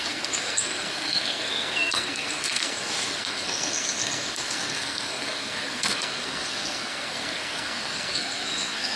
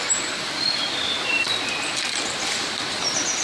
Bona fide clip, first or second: second